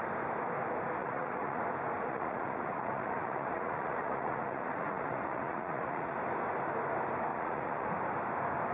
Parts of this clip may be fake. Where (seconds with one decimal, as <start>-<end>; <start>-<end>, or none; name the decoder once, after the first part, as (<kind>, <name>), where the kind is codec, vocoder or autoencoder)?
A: 1.0-1.6 (vocoder, Vocos); 2.1-6.2; 7.3-7.9